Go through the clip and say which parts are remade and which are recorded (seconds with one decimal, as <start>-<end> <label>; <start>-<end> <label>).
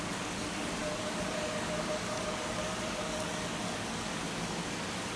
0.0-5.2 remade